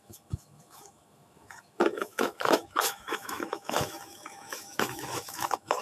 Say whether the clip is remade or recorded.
remade